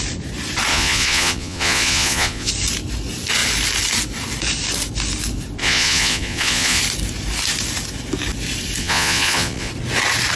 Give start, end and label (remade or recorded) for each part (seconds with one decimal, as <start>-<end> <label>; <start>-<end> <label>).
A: 0.0-0.7 recorded; 0.7-2.5 remade; 2.5-5.6 recorded; 5.6-6.8 remade; 6.8-8.8 recorded; 8.8-9.7 remade; 9.7-10.4 recorded